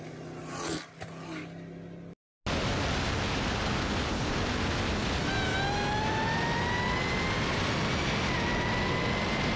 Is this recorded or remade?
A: recorded